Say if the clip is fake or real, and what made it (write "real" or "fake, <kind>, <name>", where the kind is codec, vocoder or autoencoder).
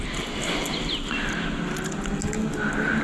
real